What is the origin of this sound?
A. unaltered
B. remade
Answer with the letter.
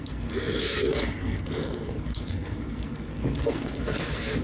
B